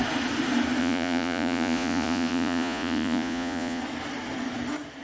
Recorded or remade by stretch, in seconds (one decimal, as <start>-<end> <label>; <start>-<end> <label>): 0.0-0.8 recorded; 0.8-3.8 remade; 3.8-5.0 recorded